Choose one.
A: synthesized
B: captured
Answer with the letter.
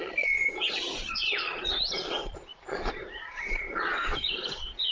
A